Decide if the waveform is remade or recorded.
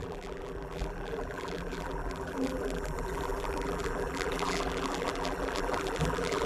remade